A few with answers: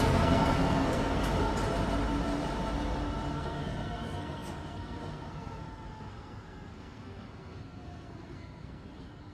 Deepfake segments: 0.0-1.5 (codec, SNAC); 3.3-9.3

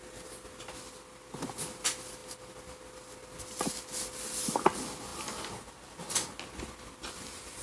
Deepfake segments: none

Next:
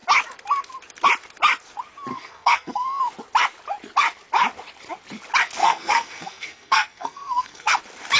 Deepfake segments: 2.1-3.0 (codec, SNAC); 5.6-7.7